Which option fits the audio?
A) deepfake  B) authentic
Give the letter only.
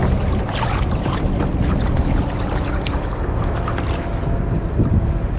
B